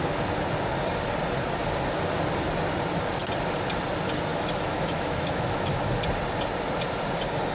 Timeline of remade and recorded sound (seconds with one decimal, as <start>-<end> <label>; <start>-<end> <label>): 0.0-4.3 recorded; 4.3-5.9 remade; 5.9-7.5 recorded

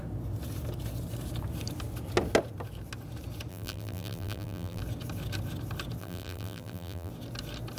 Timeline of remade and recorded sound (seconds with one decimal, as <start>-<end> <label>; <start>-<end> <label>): 0.0-3.5 recorded; 3.5-4.8 remade; 4.8-6.0 recorded; 6.0-7.1 remade; 7.1-7.8 recorded

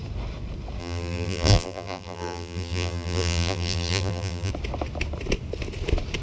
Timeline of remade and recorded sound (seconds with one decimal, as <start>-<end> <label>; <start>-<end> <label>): 0.0-0.8 recorded; 0.8-4.5 remade; 4.5-6.2 recorded

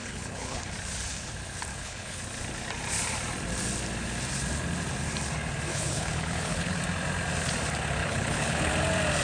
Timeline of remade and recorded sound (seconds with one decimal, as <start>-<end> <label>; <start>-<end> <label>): 0.0-0.6 remade; 0.6-1.7 recorded; 1.7-2.2 remade; 2.2-5.7 recorded; 5.7-6.8 remade; 6.8-8.0 recorded; 8.0-8.7 remade; 8.7-9.2 recorded

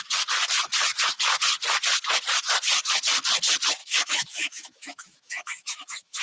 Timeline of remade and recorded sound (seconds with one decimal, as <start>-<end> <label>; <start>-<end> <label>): 0.0-3.8 recorded; 3.8-6.2 remade

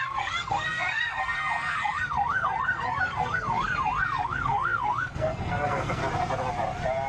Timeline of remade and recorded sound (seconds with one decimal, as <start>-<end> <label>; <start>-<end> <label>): 0.0-6.0 remade; 6.0-7.1 recorded